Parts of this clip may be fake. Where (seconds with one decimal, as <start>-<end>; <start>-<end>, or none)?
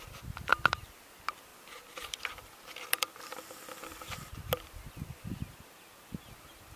none